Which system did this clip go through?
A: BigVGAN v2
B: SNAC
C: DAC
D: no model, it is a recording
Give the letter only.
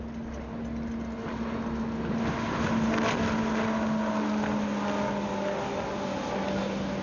D